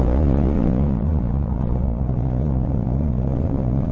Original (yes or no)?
no